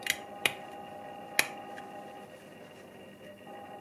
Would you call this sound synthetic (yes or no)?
no